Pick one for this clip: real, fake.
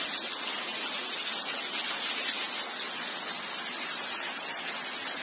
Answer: real